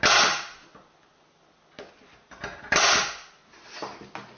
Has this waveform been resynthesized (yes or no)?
no